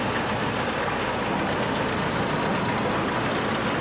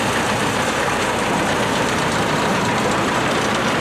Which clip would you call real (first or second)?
first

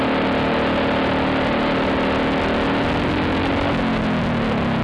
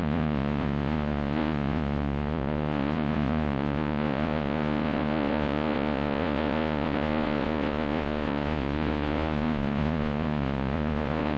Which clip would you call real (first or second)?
first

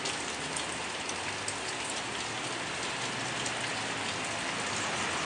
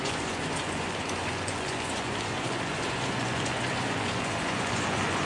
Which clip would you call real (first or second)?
first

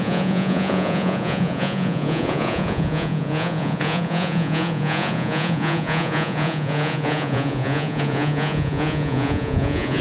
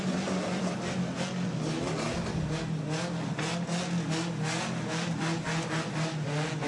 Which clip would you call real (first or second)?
second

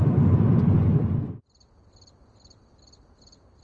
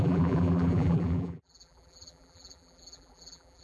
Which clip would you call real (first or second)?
first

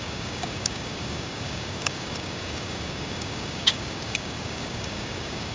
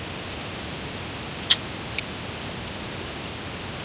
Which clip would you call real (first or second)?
second